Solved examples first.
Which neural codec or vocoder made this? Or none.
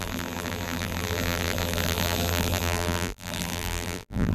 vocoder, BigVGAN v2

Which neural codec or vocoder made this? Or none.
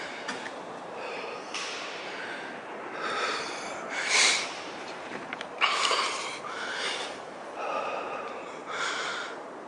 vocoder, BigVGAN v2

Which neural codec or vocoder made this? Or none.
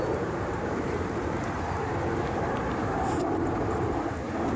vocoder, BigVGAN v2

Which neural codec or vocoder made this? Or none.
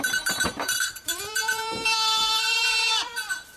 vocoder, BigVGAN v2